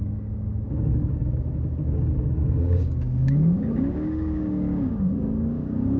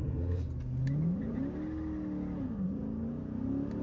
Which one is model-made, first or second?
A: first